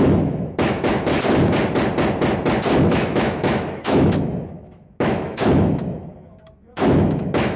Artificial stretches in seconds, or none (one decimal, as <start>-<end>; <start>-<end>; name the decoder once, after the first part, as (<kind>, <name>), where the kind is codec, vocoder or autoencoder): 0.0-1.1 (autoencoder, DAC-VAE); 2.9-7.6